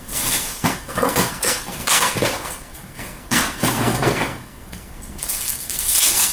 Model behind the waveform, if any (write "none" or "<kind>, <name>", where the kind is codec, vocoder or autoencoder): codec, SNAC